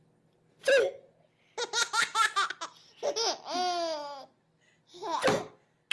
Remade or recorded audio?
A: recorded